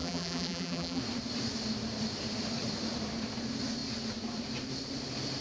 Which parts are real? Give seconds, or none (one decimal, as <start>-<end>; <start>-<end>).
1.0-5.4